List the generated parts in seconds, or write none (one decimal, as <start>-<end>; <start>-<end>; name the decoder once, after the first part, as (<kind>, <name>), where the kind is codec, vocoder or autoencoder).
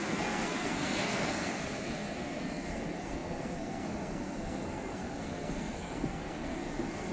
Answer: 0.0-7.1 (codec, SNAC)